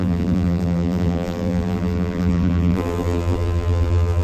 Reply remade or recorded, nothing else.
remade